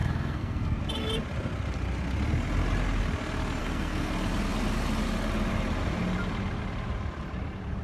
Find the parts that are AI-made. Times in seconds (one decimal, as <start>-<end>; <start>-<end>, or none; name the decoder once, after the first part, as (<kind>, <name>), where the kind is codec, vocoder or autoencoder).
0.0-0.8 (codec, SNAC); 3.6-4.1